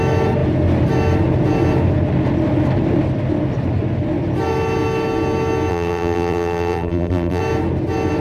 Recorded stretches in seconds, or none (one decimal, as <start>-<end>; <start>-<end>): 0.0-5.7; 7.4-8.2